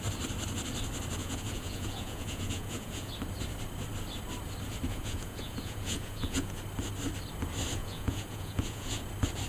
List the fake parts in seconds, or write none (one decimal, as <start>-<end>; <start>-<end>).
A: 1.2-3.1; 4.9-6.6; 7.8-9.0